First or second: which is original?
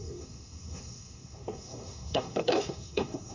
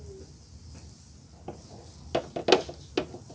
second